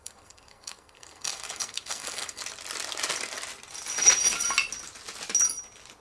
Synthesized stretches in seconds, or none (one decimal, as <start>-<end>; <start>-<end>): 0.0-2.4